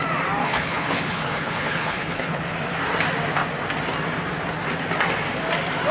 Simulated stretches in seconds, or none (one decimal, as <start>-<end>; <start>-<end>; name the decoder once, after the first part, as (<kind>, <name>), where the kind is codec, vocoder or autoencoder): 0.4-2.4 (codec, HILCodec)